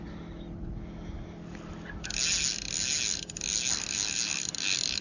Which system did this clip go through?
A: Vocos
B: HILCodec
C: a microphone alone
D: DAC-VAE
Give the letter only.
C